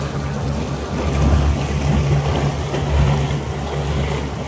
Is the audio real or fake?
real